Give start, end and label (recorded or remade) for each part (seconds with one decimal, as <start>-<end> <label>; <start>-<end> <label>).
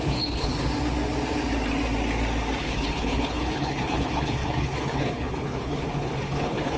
0.0-0.5 remade; 0.5-2.6 recorded; 2.6-6.8 remade